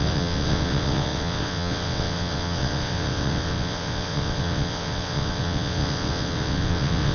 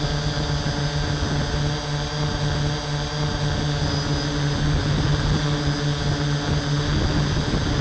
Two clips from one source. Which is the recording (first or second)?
second